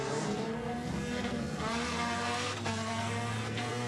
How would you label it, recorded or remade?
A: remade